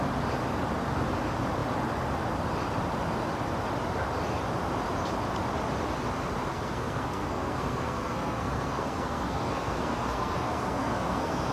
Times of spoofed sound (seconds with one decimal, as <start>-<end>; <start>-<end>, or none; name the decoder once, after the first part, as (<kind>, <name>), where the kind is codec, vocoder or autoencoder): 6.5-11.5 (codec, SNAC)